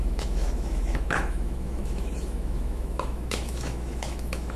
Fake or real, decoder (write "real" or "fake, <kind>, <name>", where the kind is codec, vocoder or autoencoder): fake, autoencoder, DAC-VAE